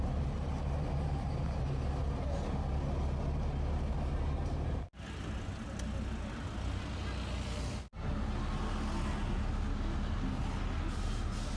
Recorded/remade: recorded